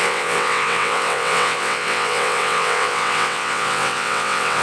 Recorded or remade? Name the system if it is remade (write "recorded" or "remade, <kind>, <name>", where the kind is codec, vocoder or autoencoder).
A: remade, vocoder, WaveNeXt